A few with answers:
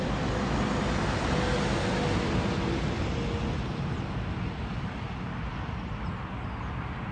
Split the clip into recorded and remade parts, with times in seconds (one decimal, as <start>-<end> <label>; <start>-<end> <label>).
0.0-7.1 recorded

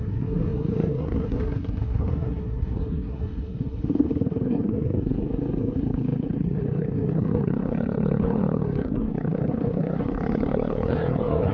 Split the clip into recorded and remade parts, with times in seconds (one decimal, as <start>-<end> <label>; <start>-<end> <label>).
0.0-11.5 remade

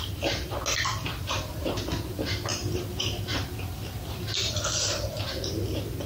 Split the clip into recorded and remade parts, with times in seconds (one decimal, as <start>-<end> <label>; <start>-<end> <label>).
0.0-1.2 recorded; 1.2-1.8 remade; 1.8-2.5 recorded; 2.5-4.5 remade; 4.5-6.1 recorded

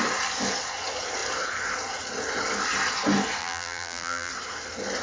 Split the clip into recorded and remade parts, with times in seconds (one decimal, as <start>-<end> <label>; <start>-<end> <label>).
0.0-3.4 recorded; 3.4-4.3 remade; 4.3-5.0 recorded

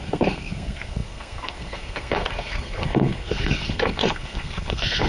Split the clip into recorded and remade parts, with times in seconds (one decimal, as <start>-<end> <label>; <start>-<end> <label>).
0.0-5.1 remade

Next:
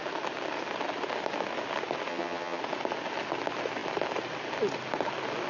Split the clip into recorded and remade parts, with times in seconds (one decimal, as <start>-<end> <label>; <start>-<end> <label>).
0.0-2.1 recorded; 2.1-2.6 remade; 2.6-5.5 recorded

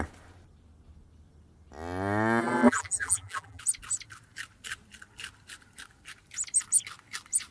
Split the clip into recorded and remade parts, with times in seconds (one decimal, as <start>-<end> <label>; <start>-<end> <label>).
0.0-2.4 recorded; 2.4-3.6 remade; 3.6-7.5 recorded

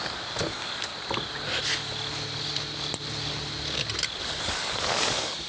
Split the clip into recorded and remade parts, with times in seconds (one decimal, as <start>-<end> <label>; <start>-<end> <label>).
0.0-0.9 remade; 0.9-4.2 recorded; 4.2-5.5 remade